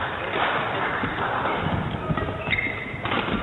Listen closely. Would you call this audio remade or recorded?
remade